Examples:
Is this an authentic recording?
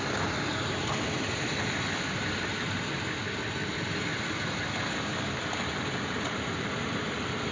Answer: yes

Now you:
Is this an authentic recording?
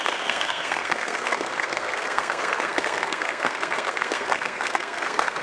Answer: no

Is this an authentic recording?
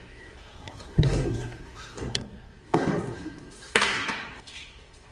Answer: no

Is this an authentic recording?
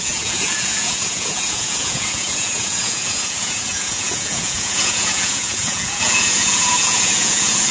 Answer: no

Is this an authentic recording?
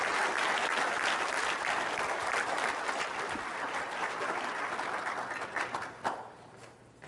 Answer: yes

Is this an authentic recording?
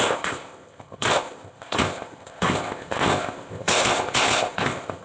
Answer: no